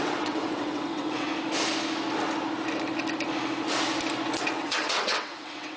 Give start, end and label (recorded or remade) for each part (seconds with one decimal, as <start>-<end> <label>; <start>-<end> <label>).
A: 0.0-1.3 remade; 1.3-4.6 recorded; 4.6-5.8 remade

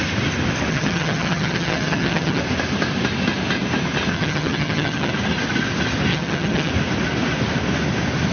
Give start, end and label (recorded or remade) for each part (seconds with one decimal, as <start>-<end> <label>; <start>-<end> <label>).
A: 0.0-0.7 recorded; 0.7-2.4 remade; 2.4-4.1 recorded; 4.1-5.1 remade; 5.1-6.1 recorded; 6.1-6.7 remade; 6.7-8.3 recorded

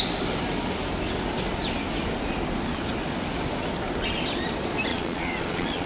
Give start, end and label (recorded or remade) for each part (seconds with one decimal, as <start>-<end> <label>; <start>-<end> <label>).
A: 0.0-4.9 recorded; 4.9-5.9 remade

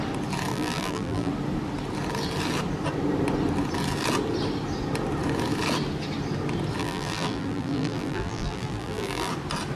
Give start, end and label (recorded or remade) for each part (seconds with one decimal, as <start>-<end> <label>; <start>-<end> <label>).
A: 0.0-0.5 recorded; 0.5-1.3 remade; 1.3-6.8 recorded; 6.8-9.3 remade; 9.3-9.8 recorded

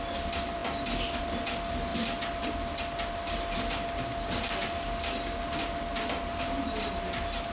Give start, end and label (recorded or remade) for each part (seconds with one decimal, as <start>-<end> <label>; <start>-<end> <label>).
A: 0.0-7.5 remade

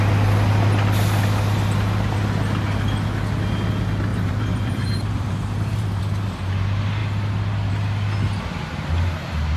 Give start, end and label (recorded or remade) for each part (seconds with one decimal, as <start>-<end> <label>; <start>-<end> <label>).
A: 0.0-4.1 recorded; 4.1-6.0 remade; 6.0-9.6 recorded